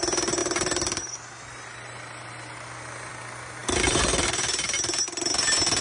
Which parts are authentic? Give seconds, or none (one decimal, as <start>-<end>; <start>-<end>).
0.0-5.8